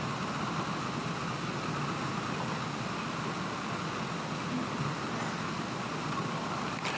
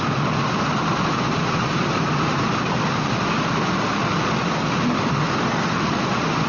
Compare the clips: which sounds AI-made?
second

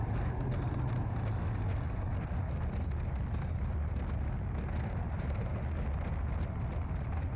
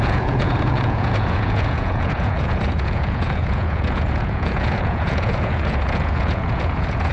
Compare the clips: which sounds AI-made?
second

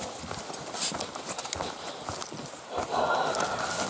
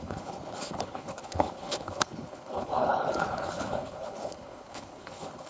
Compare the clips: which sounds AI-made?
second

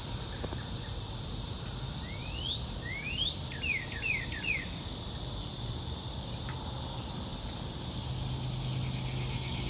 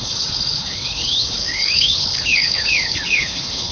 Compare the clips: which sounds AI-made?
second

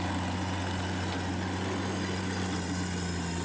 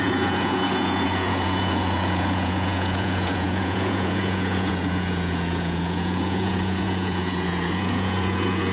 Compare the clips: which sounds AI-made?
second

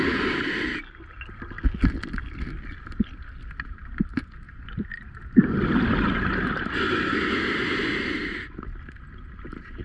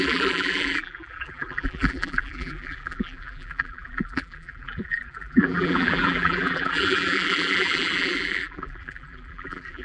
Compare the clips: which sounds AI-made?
second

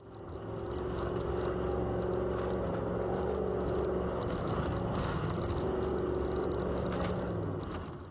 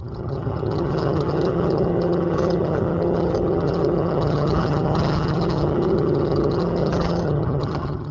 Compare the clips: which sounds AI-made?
second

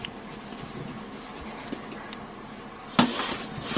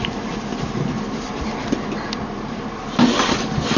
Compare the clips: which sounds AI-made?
second